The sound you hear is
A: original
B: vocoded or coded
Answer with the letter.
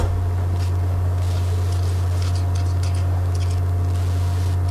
A